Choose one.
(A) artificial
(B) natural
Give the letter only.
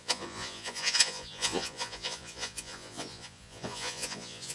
A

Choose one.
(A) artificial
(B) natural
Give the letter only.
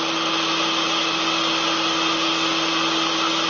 B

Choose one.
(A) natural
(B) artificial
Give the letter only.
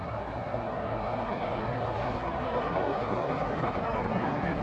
B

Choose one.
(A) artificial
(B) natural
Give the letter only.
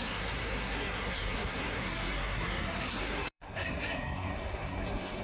A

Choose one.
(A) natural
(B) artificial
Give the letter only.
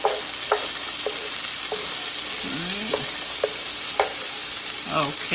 A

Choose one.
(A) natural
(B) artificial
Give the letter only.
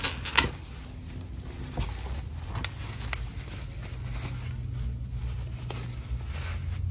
A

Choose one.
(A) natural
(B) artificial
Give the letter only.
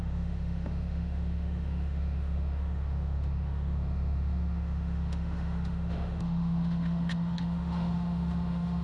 B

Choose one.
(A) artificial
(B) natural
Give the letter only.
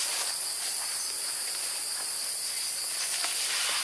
B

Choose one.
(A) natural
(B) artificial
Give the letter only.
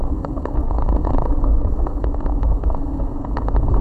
B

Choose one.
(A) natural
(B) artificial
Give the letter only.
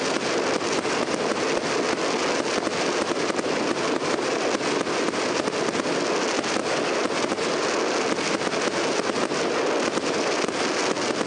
A